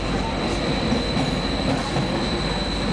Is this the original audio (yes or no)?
yes